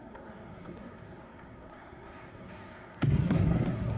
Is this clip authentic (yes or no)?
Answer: no